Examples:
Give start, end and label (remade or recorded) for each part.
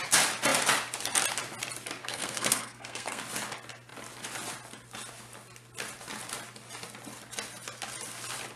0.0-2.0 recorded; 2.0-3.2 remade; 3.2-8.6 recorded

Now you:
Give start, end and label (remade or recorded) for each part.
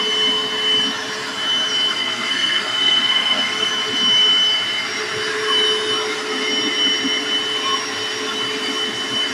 0.0-1.9 recorded; 1.9-3.7 remade; 3.7-9.3 recorded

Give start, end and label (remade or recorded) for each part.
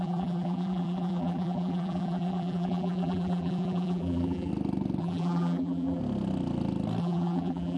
0.0-4.5 remade; 4.5-5.0 recorded; 5.0-6.0 remade; 6.0-7.0 recorded; 7.0-7.8 remade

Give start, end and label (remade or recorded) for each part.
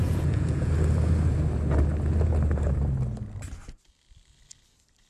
0.0-0.7 remade; 0.7-5.1 recorded